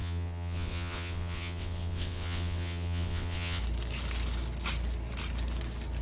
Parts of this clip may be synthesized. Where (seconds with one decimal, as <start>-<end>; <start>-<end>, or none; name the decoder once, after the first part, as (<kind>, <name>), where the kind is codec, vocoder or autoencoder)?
0.0-3.6 (vocoder, WaveNeXt)